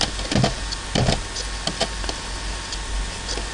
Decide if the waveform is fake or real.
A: real